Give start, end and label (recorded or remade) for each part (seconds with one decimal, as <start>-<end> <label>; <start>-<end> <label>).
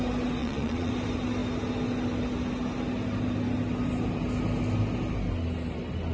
0.0-0.4 recorded; 0.4-0.9 remade; 0.9-6.1 recorded